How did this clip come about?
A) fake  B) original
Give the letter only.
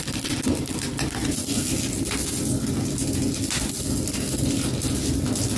B